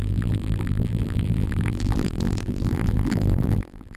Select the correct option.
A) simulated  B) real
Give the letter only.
A